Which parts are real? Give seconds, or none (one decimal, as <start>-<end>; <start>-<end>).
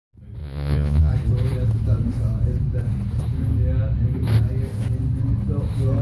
0.0-0.4; 1.1-6.0